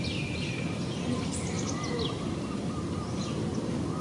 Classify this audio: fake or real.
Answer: real